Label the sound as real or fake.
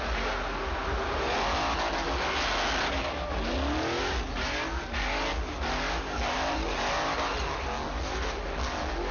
real